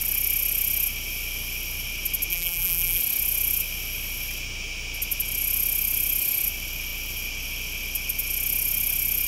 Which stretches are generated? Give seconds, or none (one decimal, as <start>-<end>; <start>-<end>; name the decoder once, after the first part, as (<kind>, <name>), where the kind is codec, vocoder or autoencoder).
2.3-3.0 (vocoder, BigVGAN v2)